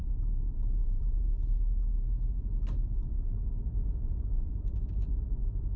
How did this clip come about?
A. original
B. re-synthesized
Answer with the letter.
B